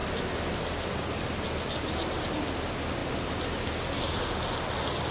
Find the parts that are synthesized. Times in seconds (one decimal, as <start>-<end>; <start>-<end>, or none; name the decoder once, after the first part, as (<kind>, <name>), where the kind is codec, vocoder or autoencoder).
none